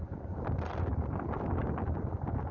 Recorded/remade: recorded